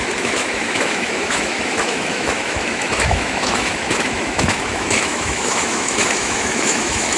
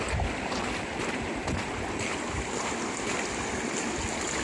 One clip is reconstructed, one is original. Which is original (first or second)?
second